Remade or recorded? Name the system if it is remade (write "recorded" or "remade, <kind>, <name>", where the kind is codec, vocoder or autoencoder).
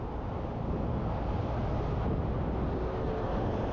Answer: recorded